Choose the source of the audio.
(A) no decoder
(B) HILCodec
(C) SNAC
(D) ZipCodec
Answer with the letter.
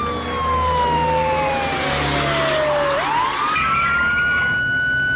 A